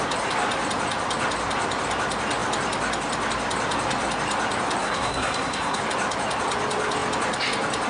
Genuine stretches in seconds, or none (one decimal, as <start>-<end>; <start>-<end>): 0.0-4.8; 5.8-7.9